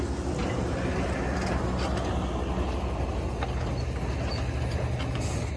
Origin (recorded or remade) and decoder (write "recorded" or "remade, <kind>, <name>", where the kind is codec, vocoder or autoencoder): recorded